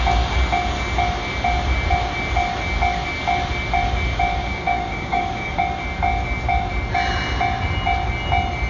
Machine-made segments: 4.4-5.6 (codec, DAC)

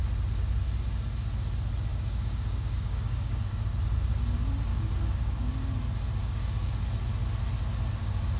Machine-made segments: 1.9-3.6 (codec, DAC); 4.7-5.5; 6.2-6.7

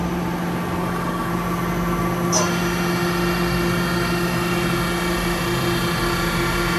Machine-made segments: 0.8-1.3 (codec, DAC)

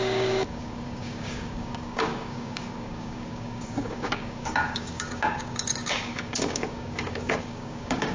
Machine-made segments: 0.0-8.1 (codec, DAC)

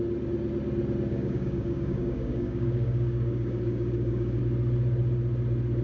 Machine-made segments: 1.1-4.4 (codec, DAC)

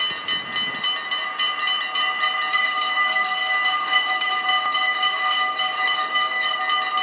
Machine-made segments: 2.5-6.6 (codec, DAC)

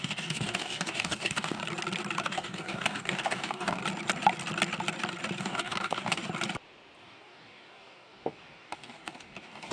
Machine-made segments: 0.0-1.6 (codec, DAC); 2.2-3.8; 5.4-6.2; 7.0-9.7